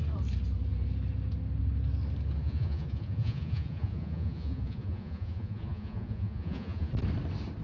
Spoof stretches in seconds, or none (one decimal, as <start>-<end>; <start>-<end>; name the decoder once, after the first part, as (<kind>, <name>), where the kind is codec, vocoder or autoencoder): 2.4-6.9 (vocoder, Vocos)